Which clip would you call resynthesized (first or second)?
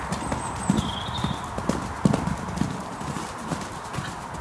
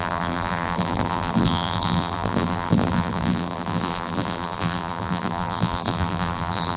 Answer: second